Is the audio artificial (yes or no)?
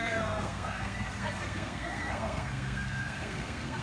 yes